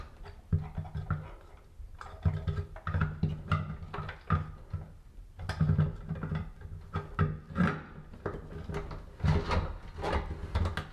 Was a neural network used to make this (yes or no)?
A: no